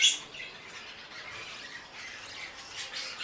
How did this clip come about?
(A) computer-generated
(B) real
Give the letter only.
B